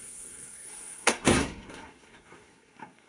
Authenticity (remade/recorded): remade